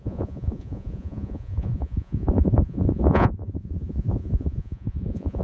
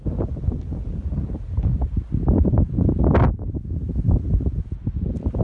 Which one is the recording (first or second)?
second